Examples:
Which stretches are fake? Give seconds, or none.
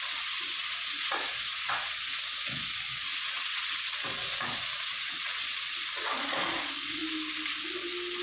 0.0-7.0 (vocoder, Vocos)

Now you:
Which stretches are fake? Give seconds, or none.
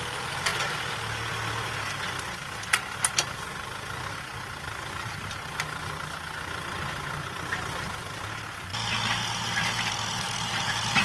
none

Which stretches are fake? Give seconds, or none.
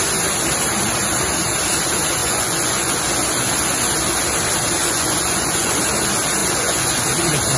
2.2-3.0 (vocoder, Vocos); 4.8-5.8; 6.4-7.0